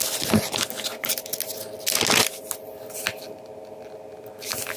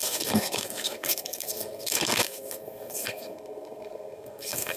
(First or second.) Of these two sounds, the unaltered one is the first